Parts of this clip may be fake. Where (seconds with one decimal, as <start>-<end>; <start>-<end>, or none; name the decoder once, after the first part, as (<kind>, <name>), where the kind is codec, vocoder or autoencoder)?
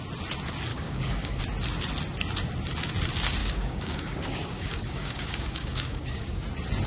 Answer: 0.7-1.4 (codec, DAC); 3.4-6.4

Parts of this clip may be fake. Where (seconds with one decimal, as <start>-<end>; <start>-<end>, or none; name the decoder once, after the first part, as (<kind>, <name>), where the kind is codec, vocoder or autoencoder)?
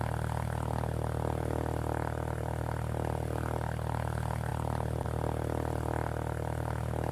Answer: none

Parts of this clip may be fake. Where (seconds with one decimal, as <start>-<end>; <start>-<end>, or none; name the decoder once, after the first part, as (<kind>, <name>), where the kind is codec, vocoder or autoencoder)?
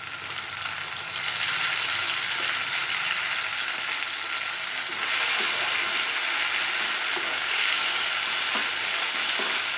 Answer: 7.3-7.8 (codec, DAC)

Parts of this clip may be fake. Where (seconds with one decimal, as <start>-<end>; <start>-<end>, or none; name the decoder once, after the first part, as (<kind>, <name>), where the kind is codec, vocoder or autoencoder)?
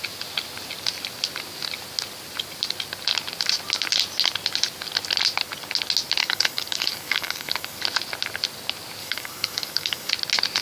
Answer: 6.2-7.8 (codec, DAC); 9.0-10.1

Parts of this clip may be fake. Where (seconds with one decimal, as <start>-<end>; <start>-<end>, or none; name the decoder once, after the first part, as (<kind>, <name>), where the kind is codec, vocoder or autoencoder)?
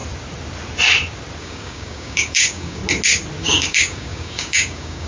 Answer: 1.4-2.8 (codec, DAC); 3.4-5.1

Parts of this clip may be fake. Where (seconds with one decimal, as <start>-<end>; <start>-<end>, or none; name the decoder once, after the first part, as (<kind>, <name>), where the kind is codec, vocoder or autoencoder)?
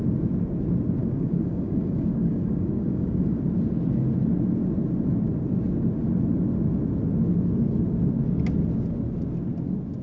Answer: 1.0-3.4 (codec, DAC)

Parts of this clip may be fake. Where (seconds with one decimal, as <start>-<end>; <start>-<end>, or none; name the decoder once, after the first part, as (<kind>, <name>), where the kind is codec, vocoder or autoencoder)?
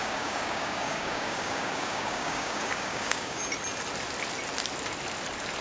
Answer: 0.0-3.4 (codec, DAC)